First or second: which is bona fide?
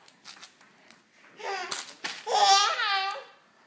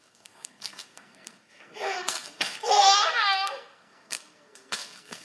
first